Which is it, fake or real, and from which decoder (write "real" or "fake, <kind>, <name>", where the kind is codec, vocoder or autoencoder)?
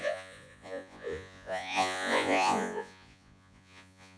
fake, vocoder, Vocos